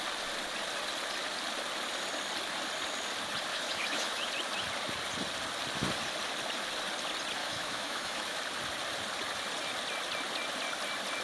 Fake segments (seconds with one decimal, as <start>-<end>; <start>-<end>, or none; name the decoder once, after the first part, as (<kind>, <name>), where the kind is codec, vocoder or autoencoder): 3.5-4.3 (autoencoder, DAC-VAE); 7.4-8.4